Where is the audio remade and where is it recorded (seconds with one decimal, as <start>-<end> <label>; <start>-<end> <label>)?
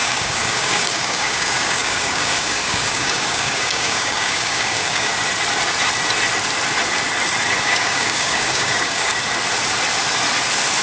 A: 0.0-5.1 remade; 5.1-7.6 recorded; 7.6-9.1 remade; 9.1-10.8 recorded